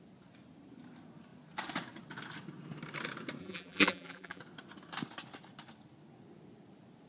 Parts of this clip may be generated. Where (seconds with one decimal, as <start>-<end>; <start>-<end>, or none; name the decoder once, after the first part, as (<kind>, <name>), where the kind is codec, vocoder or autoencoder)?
3.4-4.4 (vocoder, BigVGAN v2)